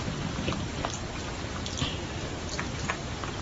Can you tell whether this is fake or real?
real